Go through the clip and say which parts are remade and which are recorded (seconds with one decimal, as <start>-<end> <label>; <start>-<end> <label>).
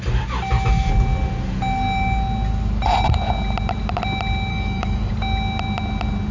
0.0-4.5 recorded; 4.5-5.1 remade; 5.1-6.3 recorded